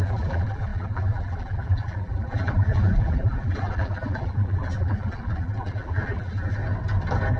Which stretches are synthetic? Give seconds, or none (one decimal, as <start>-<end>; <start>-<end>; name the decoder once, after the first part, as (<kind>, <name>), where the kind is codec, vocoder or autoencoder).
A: 0.0-6.6 (vocoder, BigVGAN v2)